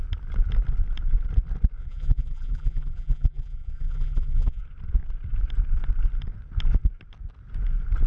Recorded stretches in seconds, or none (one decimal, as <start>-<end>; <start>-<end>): 0.0-1.8; 4.6-8.1